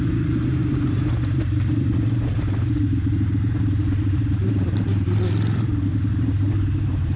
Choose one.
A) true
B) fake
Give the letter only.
B